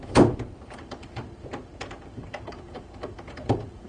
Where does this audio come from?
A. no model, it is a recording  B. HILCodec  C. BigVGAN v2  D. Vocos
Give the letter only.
C